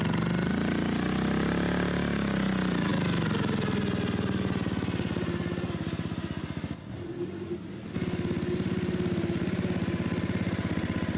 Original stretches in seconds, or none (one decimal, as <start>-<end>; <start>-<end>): 0.0-11.2